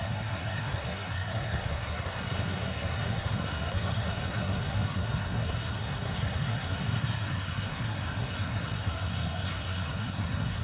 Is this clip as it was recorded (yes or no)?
no